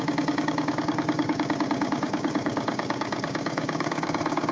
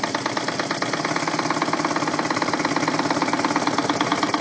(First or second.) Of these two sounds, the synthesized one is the first